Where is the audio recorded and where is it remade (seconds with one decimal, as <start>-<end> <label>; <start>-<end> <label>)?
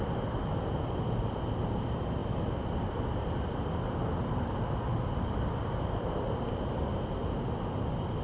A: 0.0-8.2 recorded